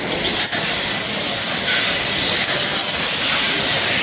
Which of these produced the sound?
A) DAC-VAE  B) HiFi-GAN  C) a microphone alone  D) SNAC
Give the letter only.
C